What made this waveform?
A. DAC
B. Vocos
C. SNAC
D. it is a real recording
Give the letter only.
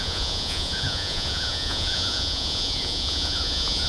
B